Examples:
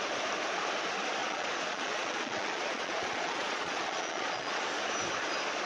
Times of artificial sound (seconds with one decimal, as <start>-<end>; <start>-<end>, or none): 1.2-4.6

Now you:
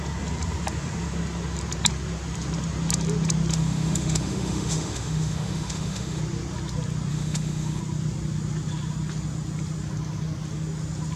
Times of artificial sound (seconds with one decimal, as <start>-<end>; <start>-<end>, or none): 3.5-6.2; 7.1-7.8

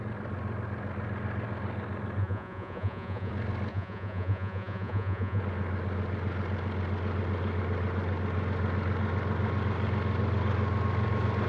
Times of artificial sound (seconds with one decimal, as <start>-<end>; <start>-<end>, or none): 2.2-3.3; 3.7-5.4

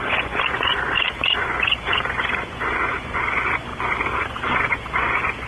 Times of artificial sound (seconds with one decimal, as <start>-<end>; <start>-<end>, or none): 0.0-3.7; 4.2-5.5

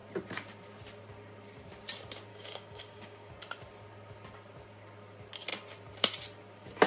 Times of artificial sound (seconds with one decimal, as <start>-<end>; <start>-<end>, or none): 2.3-3.3